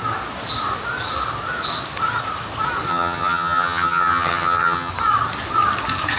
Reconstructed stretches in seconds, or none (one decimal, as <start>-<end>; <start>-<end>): 2.9-4.9